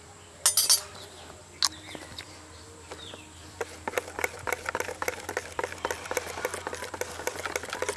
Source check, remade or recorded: recorded